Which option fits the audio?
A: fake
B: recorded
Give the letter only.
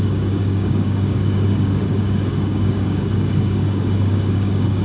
A